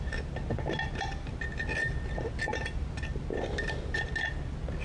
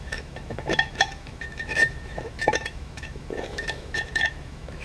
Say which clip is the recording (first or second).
first